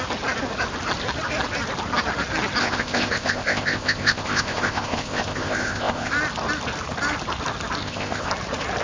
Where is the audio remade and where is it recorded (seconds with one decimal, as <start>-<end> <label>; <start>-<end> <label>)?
0.0-2.6 recorded; 2.6-6.1 remade; 6.1-7.8 recorded; 7.8-8.3 remade; 8.3-8.8 recorded